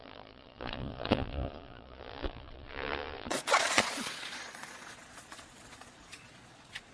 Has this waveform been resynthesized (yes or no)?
yes